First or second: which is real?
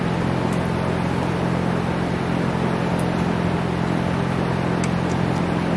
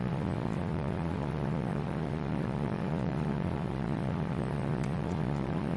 first